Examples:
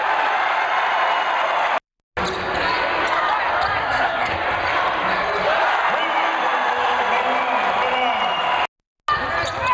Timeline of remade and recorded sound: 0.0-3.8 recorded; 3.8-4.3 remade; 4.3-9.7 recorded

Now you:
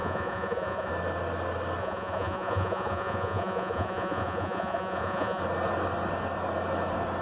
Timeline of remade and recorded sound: 0.0-0.9 remade; 0.9-1.8 recorded; 1.8-5.4 remade; 5.4-7.2 recorded

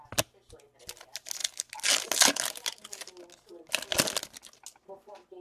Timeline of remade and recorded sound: 0.0-5.4 recorded

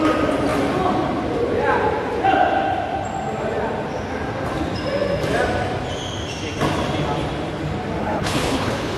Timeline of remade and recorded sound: 0.0-8.0 recorded; 8.0-9.0 remade

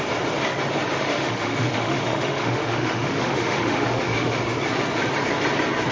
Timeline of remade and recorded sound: 0.0-0.9 recorded; 0.9-4.4 remade; 4.4-5.9 recorded

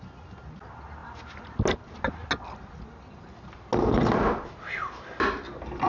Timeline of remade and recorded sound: 0.0-5.9 recorded

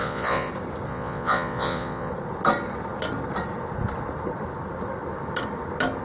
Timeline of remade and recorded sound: 0.0-0.5 remade; 0.5-0.9 recorded; 0.9-2.1 remade; 2.1-6.0 recorded

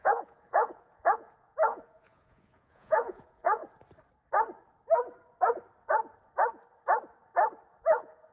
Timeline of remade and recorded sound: 0.0-3.6 remade; 3.6-7.8 recorded; 7.8-8.3 remade